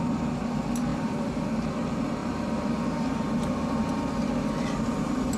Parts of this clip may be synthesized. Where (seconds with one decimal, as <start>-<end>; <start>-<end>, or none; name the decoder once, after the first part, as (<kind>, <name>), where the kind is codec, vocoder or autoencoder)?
0.9-1.8 (vocoder, BigVGAN v2); 2.2-5.4